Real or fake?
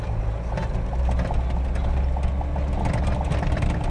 real